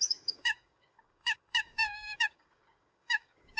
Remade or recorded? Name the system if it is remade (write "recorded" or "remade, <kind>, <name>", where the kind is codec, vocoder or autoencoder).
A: remade, codec, DAC